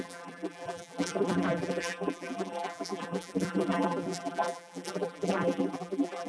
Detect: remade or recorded remade